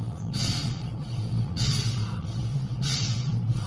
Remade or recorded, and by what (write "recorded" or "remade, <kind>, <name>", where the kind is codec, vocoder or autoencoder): remade, vocoder, Vocos